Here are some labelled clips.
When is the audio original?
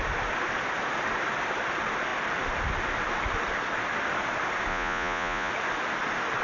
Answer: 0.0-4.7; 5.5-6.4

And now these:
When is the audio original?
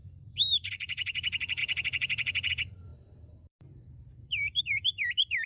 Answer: none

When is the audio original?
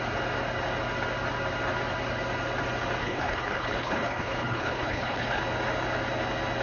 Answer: 0.0-3.0; 5.4-6.6